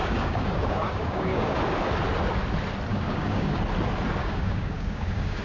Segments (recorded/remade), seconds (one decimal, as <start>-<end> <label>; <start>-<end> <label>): 0.0-1.6 remade; 1.6-2.9 recorded; 2.9-3.6 remade; 3.6-4.2 recorded; 4.2-5.4 remade